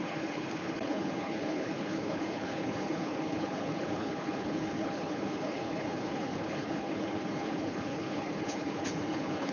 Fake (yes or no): yes